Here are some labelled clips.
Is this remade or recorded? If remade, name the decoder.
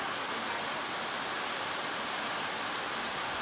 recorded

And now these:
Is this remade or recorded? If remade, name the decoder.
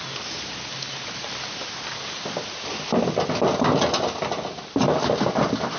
recorded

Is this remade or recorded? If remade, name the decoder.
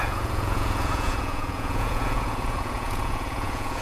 remade, vocoder, Vocos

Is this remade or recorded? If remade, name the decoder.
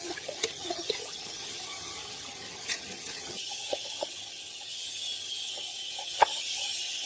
remade, vocoder, HiFi-GAN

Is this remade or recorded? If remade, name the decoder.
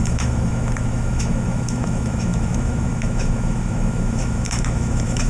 remade, autoencoder, DAC-VAE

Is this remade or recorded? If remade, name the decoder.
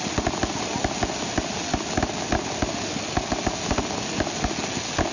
recorded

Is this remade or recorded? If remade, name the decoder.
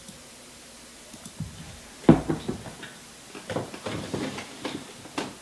recorded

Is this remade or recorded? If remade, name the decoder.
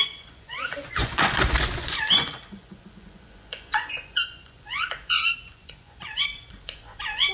remade, vocoder, Vocos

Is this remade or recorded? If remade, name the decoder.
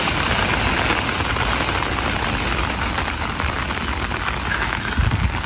recorded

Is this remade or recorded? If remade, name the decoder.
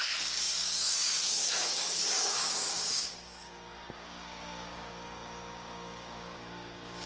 remade, codec, DAC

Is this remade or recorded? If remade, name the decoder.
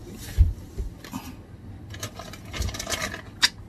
recorded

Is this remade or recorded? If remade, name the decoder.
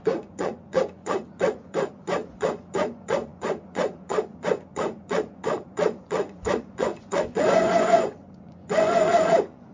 remade, vocoder, Vocos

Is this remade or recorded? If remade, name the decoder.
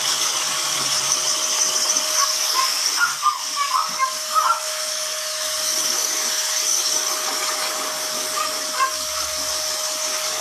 remade, codec, DAC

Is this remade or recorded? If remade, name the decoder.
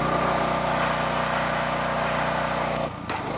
recorded